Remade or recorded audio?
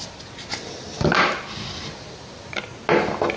recorded